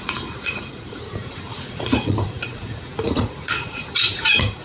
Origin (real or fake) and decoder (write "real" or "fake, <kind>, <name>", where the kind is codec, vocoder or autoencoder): fake, vocoder, Vocos